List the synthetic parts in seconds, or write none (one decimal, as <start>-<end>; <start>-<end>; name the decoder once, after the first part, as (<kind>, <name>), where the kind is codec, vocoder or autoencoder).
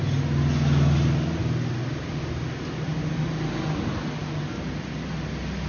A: none